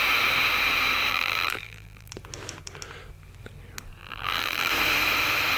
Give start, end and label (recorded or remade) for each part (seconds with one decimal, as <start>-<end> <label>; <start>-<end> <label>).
0.0-1.1 recorded; 1.1-2.1 remade; 2.1-4.0 recorded; 4.0-4.7 remade; 4.7-5.6 recorded